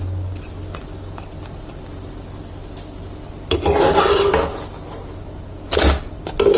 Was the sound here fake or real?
real